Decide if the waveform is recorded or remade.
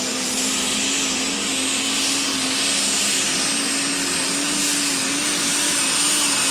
recorded